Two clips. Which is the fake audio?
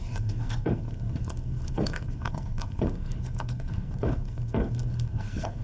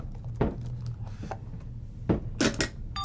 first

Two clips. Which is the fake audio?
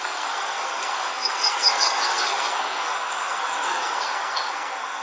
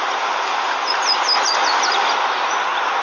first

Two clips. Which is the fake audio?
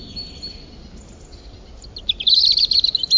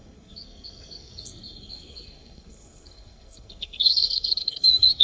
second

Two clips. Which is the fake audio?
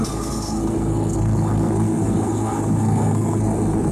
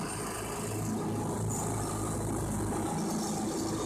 first